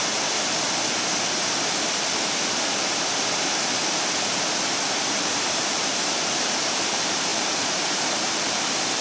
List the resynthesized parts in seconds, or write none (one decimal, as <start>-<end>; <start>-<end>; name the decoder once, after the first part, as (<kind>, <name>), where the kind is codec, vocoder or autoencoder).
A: 5.0-9.0 (vocoder, BigVGAN v2)